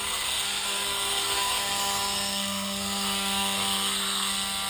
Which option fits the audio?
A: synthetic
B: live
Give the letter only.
A